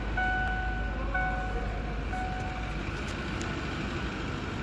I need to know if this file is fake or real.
real